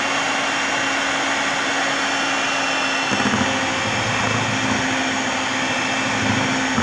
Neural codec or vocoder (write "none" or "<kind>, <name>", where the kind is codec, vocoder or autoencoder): none